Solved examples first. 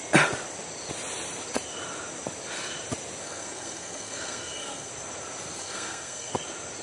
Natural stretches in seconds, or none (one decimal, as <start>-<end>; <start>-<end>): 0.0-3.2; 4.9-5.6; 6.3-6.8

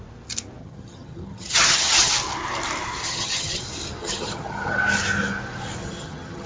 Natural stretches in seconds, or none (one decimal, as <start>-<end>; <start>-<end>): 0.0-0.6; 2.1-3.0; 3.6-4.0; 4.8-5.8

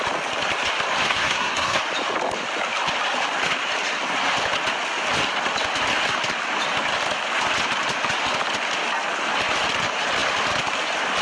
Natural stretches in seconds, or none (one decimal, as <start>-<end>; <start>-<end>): 0.0-1.1; 1.8-11.2

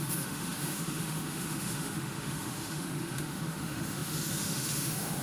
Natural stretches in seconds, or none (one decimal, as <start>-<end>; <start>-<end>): none